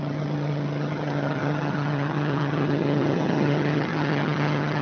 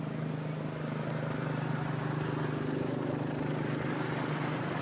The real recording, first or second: second